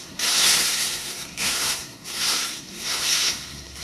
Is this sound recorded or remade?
remade